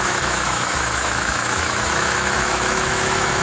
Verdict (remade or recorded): remade